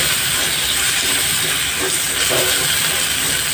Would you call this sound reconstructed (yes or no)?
yes